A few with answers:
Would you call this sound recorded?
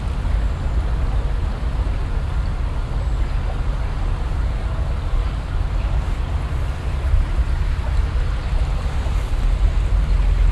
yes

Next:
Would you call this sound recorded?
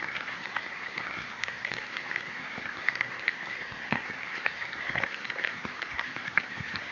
no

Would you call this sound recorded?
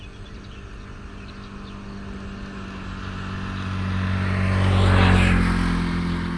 yes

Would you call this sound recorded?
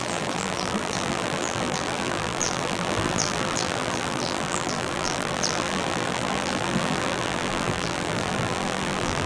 no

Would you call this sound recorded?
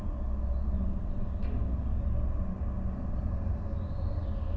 yes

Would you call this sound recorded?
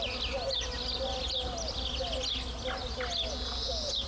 yes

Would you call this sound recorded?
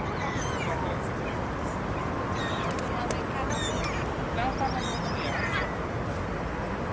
yes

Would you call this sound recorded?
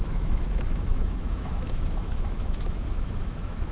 no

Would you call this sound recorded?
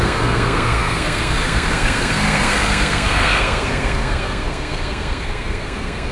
no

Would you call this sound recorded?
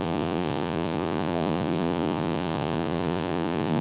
no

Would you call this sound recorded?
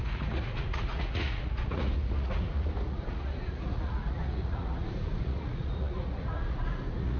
no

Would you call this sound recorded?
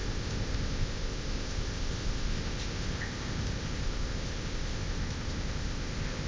no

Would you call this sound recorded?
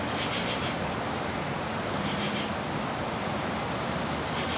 yes